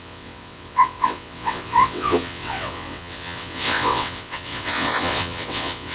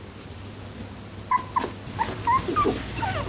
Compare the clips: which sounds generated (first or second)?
first